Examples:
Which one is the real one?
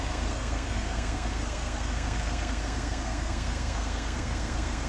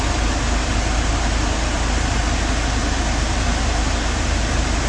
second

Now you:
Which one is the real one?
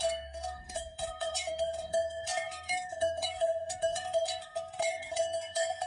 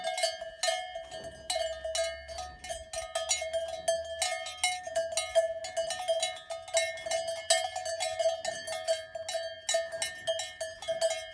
second